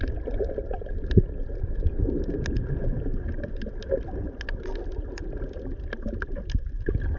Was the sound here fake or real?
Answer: real